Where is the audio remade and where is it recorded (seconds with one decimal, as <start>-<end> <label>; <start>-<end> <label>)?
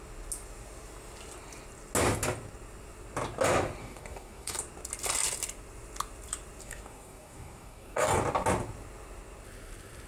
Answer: 0.0-3.8 recorded; 3.8-4.6 remade; 4.6-6.6 recorded; 6.6-8.2 remade; 8.2-10.1 recorded